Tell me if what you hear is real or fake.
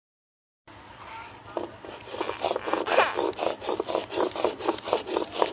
real